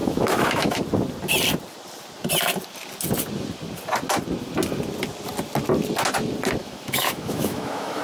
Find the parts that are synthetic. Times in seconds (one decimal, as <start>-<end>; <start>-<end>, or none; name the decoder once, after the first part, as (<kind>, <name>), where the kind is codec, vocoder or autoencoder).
0.0-0.8 (autoencoder, DAC-VAE); 6.6-8.0